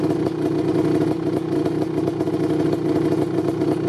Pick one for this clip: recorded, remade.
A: recorded